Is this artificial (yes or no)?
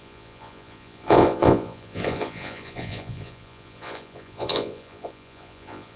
yes